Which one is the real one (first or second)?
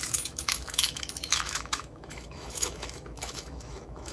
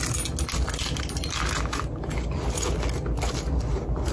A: second